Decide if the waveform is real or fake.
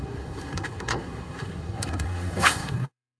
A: fake